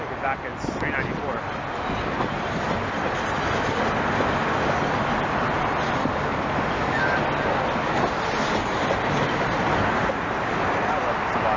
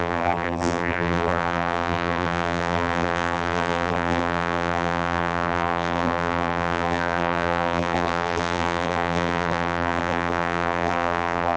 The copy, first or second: second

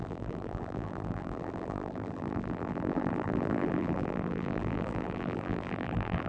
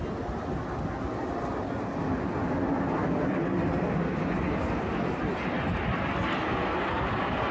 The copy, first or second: first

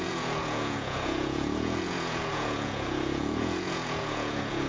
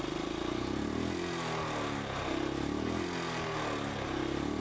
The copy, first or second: first